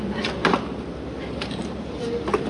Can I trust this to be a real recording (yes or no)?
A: no